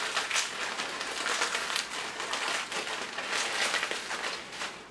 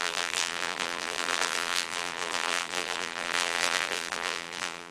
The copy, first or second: second